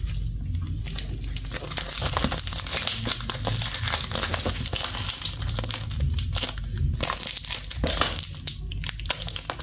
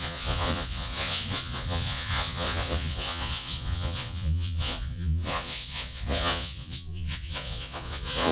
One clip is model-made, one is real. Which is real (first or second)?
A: first